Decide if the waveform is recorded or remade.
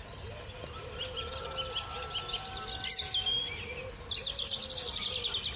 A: recorded